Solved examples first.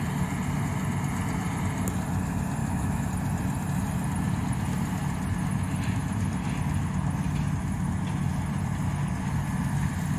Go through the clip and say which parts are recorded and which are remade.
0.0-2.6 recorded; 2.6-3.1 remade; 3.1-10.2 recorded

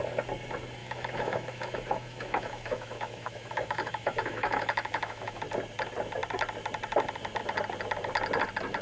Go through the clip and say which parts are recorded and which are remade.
0.0-0.8 recorded; 0.8-5.4 remade; 5.4-8.8 recorded

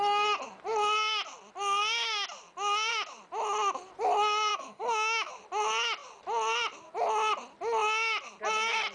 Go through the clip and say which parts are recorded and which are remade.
0.0-4.5 recorded; 4.5-5.3 remade; 5.3-8.9 recorded

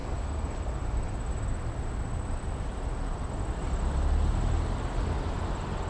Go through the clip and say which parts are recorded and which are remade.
0.0-5.9 recorded

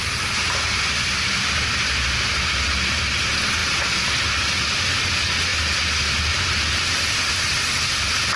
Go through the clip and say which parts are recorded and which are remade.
0.0-8.4 recorded